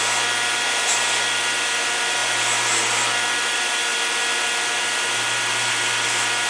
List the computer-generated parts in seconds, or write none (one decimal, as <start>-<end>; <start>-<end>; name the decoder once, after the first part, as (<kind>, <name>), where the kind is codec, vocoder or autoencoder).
none